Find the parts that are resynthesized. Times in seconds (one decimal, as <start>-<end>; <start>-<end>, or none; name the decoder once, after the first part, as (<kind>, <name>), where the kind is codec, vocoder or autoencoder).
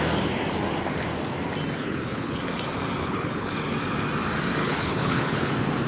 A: 1.8-2.4 (codec, HILCodec); 3.0-3.5; 4.6-5.5